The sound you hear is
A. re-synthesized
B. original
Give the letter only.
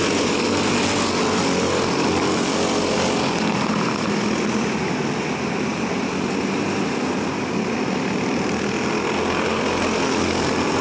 B